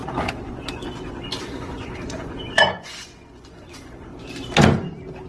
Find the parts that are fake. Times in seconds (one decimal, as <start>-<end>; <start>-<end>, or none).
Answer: 0.0-4.1